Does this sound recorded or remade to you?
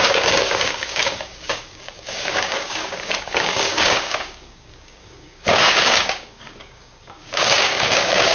remade